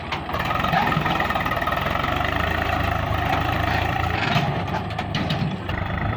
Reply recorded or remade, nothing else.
remade